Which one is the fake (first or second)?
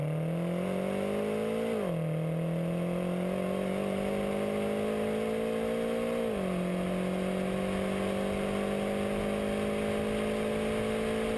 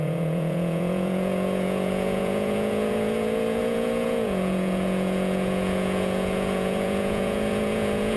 second